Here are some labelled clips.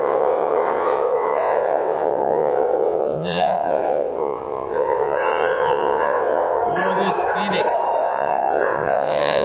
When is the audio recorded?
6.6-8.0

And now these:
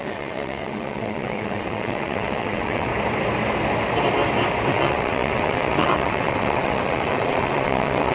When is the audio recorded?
2.9-4.7

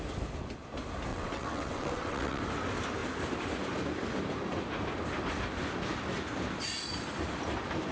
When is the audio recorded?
0.0-1.1; 2.4-7.9

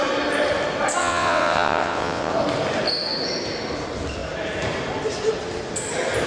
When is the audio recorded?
0.0-1.0; 2.3-6.3

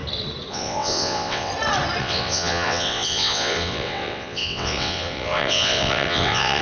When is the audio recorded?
0.0-0.5; 1.5-2.0

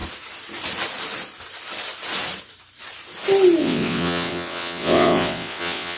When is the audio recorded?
0.0-3.6

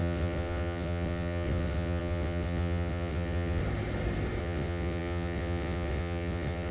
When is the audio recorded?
3.6-4.4

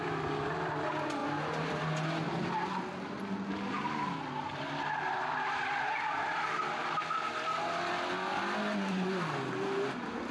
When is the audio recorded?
0.0-10.3